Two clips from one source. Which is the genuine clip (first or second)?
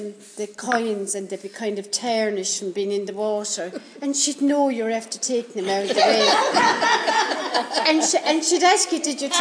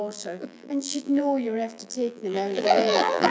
first